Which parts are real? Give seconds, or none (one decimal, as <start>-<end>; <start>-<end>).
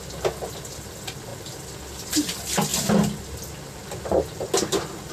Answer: 0.0-5.1